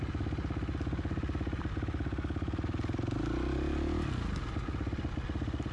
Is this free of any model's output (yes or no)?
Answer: yes